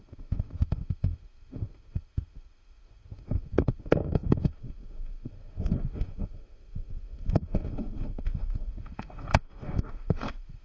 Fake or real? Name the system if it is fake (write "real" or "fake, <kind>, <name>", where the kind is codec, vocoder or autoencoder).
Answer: fake, autoencoder, DAC-VAE